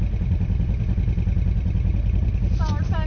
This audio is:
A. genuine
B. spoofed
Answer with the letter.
A